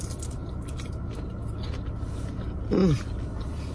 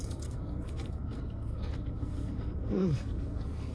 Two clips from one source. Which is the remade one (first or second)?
second